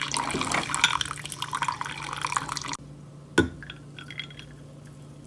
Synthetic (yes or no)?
no